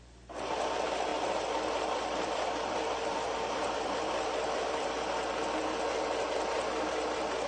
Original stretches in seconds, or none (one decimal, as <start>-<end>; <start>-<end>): 0.0-1.1; 5.6-7.5

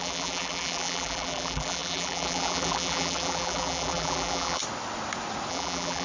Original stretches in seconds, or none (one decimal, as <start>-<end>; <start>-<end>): 4.6-5.5

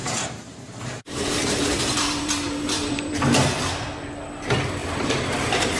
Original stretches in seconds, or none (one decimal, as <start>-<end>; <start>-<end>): 3.3-4.8

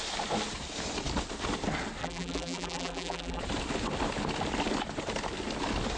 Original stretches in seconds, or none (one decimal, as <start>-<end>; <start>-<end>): 0.0-2.0; 3.4-6.0

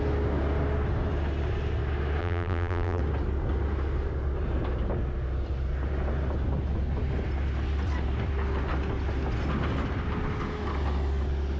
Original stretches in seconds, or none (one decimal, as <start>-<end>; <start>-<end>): 0.0-2.2; 3.0-11.6

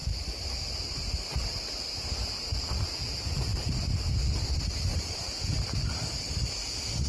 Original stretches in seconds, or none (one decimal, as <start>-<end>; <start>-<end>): 2.6-4.9; 6.6-7.1

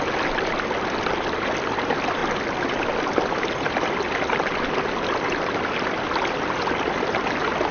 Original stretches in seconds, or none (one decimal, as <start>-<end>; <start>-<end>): 0.0-2.2; 3.0-7.7

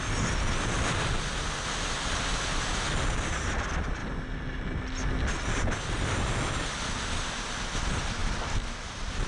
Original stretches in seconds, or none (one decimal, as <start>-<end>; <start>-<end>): 0.0-9.3